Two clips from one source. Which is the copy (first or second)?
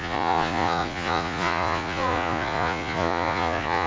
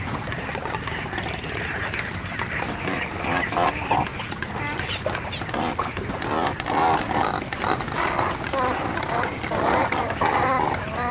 first